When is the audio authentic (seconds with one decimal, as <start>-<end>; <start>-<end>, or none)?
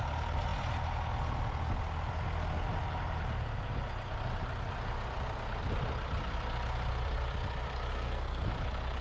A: 0.0-7.9; 8.5-9.0